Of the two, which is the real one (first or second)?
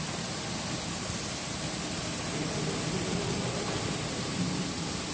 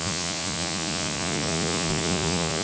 first